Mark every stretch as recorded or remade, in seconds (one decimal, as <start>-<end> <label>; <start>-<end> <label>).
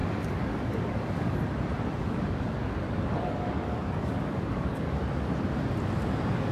0.0-1.4 remade; 1.4-2.0 recorded; 2.0-5.0 remade; 5.0-6.5 recorded